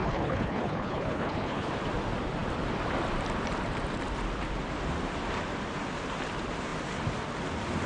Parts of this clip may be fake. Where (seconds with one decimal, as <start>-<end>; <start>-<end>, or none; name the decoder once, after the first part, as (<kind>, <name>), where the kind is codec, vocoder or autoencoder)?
0.0-1.7 (codec, HILCodec)